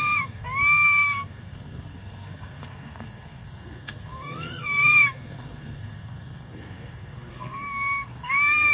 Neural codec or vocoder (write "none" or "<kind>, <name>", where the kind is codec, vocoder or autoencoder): codec, SNAC